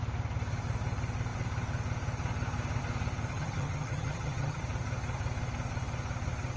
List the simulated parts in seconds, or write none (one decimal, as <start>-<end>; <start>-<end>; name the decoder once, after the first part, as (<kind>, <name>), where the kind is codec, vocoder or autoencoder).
3.3-4.6 (vocoder, HiFi-GAN)